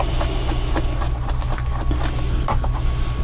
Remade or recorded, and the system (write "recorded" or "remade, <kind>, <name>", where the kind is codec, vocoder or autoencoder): recorded